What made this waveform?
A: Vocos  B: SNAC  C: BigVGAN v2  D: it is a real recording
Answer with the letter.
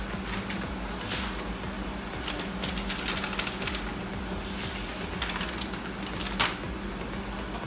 D